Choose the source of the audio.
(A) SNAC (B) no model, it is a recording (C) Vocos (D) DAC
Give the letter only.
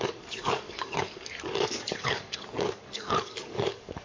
D